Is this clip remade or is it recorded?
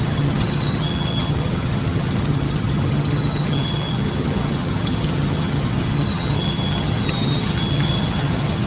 remade